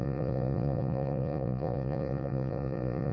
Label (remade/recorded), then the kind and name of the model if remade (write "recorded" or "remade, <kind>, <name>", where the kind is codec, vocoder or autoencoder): remade, vocoder, Vocos